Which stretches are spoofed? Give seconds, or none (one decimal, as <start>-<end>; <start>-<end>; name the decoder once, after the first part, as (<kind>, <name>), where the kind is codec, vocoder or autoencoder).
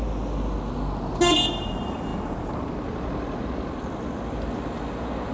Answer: none